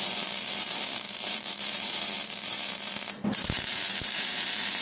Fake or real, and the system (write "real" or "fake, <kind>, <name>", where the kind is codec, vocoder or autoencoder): fake, vocoder, BigVGAN v2